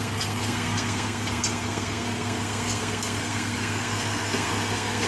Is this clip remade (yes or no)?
yes